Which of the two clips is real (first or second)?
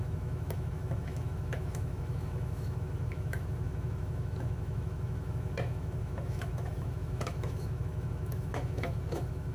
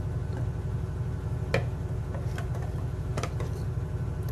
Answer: second